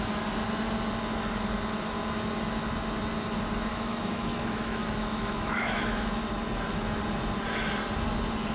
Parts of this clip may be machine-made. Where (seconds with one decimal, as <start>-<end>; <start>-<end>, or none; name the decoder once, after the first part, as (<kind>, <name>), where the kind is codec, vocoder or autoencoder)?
3.7-6.2 (autoencoder, DAC-VAE)